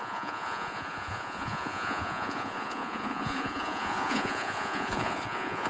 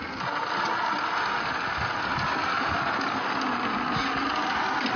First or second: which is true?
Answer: second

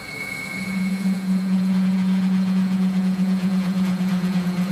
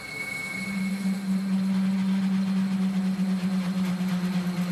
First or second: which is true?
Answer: second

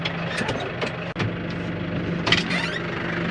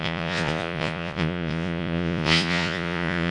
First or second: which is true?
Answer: first